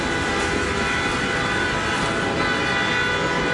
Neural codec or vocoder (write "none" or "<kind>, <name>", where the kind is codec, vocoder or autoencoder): none